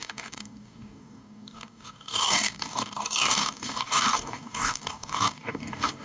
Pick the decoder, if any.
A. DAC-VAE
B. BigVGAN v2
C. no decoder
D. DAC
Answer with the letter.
D